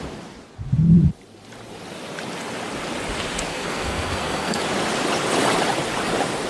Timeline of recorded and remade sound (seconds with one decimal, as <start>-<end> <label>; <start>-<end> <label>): 0.0-3.5 recorded; 3.5-4.6 remade; 4.6-6.5 recorded